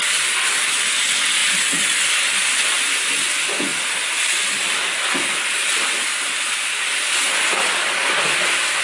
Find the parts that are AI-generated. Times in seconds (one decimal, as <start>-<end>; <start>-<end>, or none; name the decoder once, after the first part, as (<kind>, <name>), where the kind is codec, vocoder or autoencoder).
none